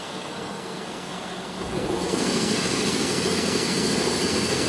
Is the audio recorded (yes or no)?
no